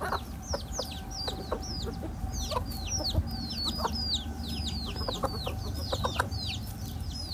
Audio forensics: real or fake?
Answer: real